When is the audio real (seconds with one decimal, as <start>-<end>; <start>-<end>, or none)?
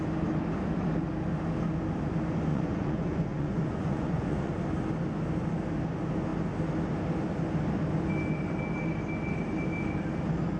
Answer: 0.0-2.5; 4.5-10.6